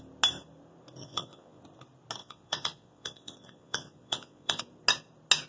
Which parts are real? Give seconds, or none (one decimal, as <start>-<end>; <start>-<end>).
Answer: 0.0-1.0; 1.6-2.2; 4.6-5.5